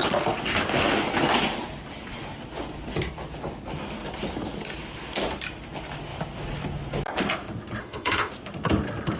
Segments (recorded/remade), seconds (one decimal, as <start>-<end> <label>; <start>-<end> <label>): 0.0-7.8 recorded; 7.8-8.3 remade; 8.3-9.2 recorded